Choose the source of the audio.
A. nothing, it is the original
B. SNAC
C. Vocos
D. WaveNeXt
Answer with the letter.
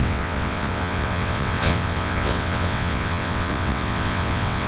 D